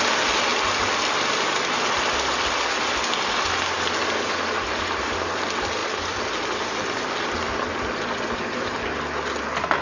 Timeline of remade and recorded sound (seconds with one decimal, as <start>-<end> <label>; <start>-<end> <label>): 0.0-9.8 recorded